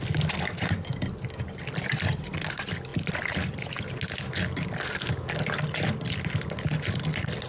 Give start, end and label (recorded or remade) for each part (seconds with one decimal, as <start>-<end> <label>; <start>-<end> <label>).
0.0-7.5 recorded